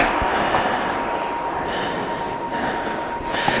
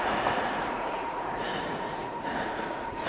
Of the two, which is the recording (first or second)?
first